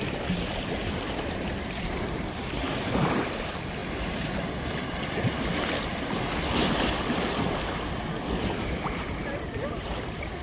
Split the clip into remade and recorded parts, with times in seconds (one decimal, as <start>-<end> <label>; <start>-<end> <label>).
0.0-10.4 recorded